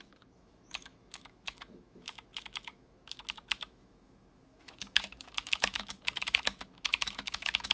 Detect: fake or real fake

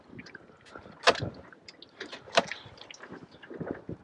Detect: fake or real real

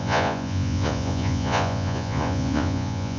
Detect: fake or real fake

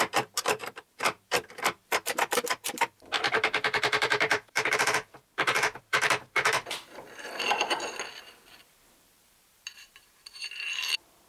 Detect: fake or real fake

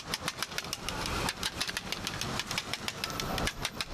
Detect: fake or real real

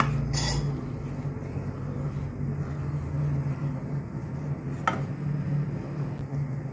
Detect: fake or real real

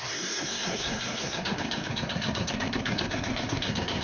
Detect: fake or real fake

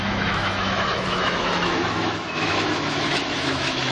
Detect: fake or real fake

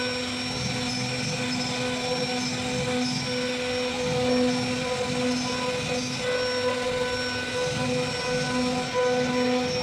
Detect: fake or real real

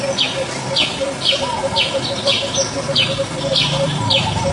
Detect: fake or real fake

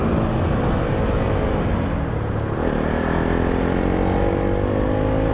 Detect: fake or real real